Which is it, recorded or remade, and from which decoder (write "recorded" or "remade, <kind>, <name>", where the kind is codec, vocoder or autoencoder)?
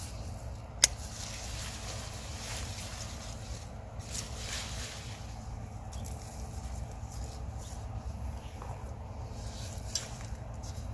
recorded